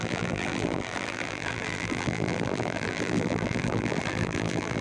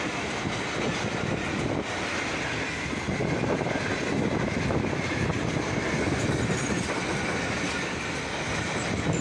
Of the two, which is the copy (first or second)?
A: first